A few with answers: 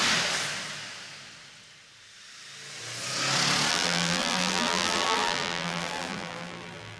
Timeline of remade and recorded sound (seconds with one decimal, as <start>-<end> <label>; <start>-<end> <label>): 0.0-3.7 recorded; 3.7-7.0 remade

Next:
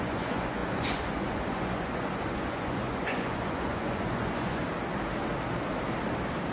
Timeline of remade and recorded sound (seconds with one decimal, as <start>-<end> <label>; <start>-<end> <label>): 0.0-4.6 remade; 4.6-6.5 recorded

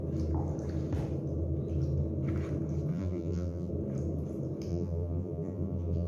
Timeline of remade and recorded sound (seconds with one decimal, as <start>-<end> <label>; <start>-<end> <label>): 0.0-2.9 recorded; 2.9-3.7 remade; 3.7-4.7 recorded; 4.7-6.1 remade

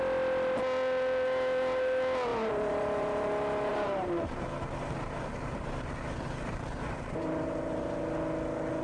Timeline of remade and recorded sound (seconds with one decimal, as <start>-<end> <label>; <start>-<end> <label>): 0.0-2.3 recorded; 2.3-3.3 remade; 3.3-3.7 recorded; 3.7-8.0 remade; 8.0-8.8 recorded

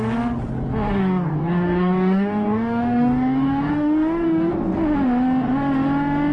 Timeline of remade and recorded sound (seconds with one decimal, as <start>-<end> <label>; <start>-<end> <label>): 0.0-1.0 recorded; 1.0-4.5 remade; 4.5-6.3 recorded

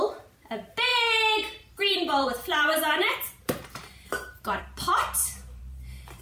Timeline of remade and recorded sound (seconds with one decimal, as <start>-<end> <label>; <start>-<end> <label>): 0.0-0.9 recorded; 0.9-4.6 remade; 4.6-5.2 recorded; 5.2-6.2 remade